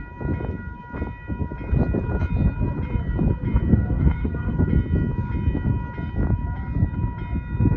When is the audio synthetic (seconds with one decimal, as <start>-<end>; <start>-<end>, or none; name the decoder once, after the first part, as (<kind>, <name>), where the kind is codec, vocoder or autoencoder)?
3.7-4.6 (codec, SNAC)